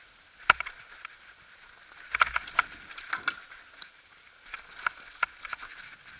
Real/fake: real